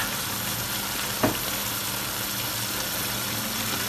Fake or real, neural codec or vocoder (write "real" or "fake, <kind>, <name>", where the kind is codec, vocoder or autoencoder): real